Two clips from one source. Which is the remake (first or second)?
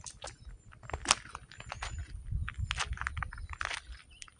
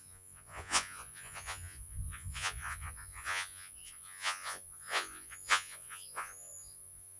second